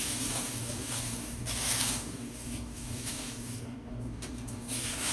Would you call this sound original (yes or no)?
no